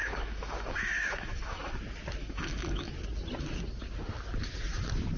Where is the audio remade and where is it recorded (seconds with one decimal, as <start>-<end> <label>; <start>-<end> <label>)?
0.0-1.7 remade; 1.7-2.2 recorded; 2.2-2.9 remade; 2.9-5.2 recorded